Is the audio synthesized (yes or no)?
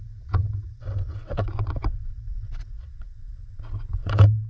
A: yes